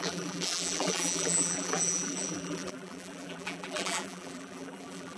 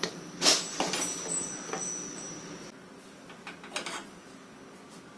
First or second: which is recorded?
second